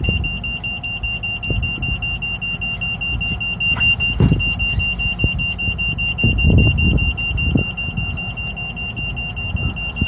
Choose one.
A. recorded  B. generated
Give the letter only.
A